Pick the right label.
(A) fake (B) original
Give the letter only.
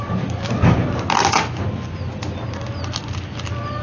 B